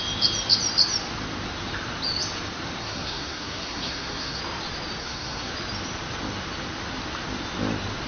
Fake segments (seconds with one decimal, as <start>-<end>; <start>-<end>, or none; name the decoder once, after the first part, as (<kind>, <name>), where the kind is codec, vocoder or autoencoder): 2.8-4.4 (codec, SNAC); 5.0-5.5